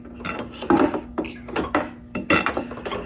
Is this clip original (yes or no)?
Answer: yes